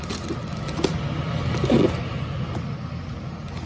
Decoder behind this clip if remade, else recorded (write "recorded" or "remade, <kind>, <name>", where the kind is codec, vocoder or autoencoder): recorded